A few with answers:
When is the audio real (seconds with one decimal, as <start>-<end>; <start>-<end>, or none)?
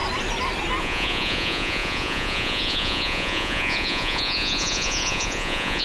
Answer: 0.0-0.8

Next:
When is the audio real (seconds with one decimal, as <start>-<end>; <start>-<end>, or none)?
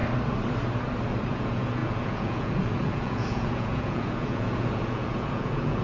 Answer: 0.0-1.3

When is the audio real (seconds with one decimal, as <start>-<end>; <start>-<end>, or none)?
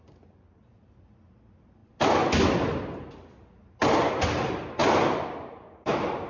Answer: 0.0-6.3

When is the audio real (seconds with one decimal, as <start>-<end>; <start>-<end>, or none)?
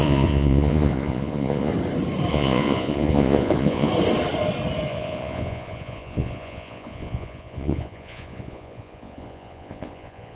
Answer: 1.7-2.3; 3.9-4.9